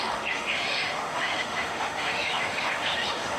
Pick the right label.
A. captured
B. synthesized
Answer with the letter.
B